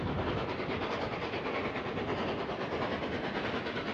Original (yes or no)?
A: yes